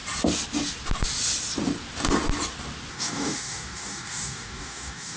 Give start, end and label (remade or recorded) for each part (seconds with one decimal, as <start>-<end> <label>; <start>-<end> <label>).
0.0-2.9 recorded; 2.9-5.2 remade